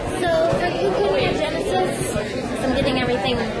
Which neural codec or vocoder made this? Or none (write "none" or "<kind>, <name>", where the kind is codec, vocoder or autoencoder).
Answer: none